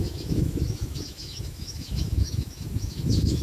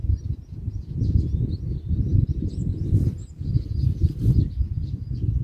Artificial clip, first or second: first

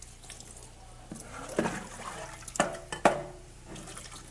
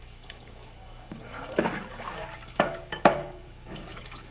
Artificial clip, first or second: second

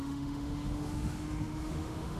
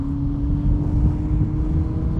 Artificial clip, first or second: first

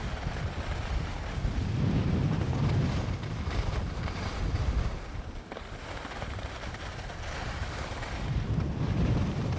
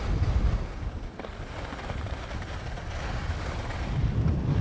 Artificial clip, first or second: first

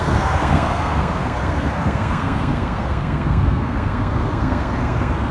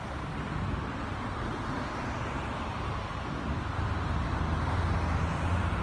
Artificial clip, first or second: first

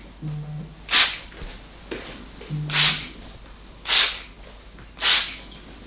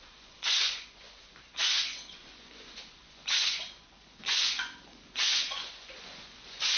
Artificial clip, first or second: second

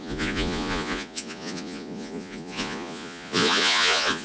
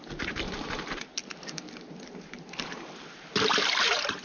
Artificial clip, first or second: first